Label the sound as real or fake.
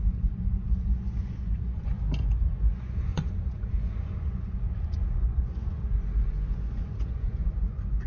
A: fake